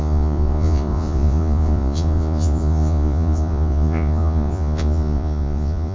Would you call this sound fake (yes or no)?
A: yes